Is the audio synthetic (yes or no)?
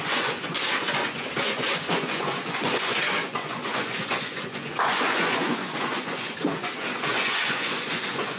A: yes